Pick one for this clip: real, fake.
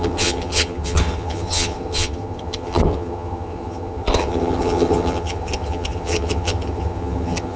fake